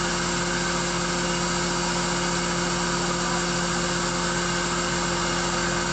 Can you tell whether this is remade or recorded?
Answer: recorded